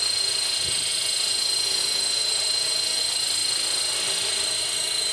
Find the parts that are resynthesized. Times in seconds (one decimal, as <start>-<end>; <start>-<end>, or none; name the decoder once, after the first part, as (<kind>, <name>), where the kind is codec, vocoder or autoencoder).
none